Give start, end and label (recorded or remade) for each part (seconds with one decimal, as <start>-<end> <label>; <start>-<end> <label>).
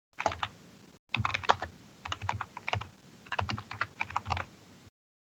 0.0-1.3 recorded; 1.3-3.5 remade; 3.5-4.3 recorded; 4.3-5.3 remade